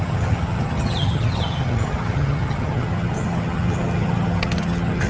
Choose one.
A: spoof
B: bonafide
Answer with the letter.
A